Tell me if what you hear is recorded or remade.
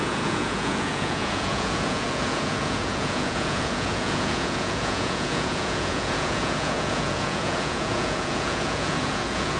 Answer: remade